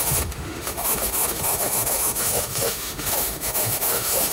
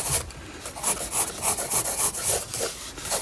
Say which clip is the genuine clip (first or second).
second